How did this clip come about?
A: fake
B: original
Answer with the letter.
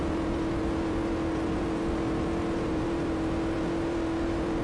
A